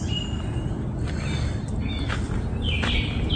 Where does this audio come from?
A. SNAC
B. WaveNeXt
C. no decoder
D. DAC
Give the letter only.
C